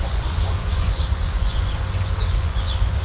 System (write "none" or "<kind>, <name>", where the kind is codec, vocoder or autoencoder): vocoder, Vocos